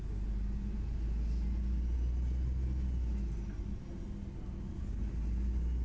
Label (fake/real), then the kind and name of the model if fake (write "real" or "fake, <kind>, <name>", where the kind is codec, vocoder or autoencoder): real